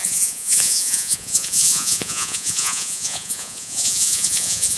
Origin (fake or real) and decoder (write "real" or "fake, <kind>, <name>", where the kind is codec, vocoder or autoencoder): fake, vocoder, Vocos